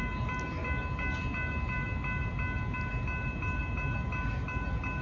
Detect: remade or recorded recorded